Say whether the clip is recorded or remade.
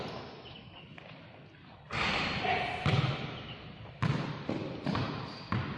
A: recorded